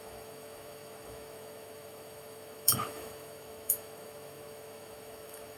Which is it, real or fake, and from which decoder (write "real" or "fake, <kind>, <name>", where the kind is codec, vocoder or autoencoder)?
fake, autoencoder, DAC-VAE